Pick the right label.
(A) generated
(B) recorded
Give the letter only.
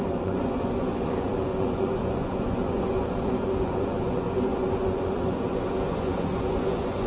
A